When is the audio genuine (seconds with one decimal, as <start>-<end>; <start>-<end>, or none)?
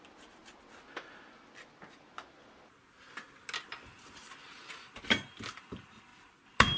0.0-6.1